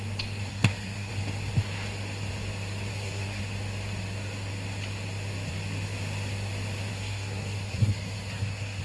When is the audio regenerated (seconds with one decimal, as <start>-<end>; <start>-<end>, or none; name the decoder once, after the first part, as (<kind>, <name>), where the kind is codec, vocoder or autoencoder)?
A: 0.5-1.1 (codec, SNAC); 2.9-3.4; 6.9-8.8